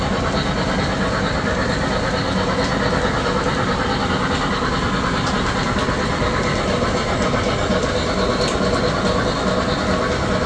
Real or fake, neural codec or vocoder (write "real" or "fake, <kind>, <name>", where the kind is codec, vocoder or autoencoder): real